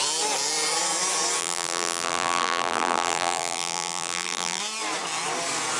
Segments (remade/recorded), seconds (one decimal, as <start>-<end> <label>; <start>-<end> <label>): 0.0-1.4 recorded; 1.4-4.6 remade; 4.6-5.8 recorded